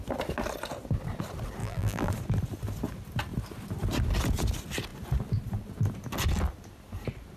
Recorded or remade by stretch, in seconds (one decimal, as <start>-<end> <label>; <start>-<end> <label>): 0.0-1.6 recorded; 1.6-2.1 remade; 2.1-7.4 recorded

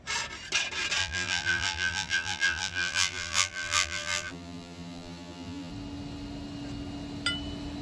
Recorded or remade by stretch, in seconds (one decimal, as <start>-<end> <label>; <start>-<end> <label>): 0.0-1.0 recorded; 1.0-5.7 remade; 5.7-7.8 recorded

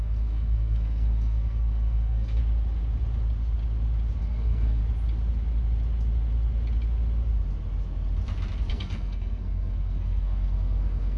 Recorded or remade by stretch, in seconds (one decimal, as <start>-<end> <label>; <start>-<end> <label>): 0.0-2.4 remade; 2.4-4.2 recorded; 4.2-4.8 remade; 4.8-8.7 recorded; 8.7-11.2 remade

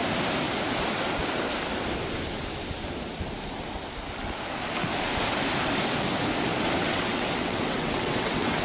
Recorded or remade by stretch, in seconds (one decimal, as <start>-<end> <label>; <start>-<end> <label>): 0.0-6.8 recorded; 6.8-8.6 remade

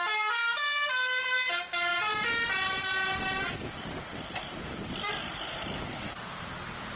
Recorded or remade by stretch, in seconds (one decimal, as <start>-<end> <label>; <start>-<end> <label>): 0.0-7.0 recorded